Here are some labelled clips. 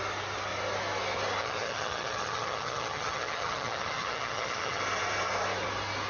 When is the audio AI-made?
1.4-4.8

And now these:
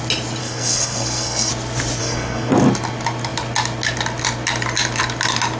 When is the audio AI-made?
0.4-1.5; 2.0-2.5

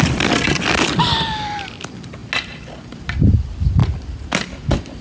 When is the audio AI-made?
0.0-2.2; 3.2-3.8

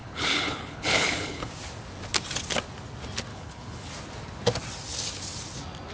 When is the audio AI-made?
0.0-1.5; 3.3-3.9

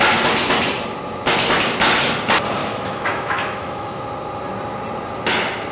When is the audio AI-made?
2.6-4.0

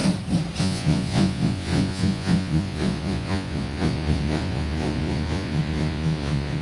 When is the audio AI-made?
0.6-6.6

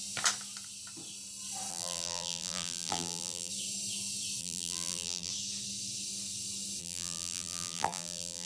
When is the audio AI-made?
1.7-3.5; 4.4-5.3; 6.8-8.5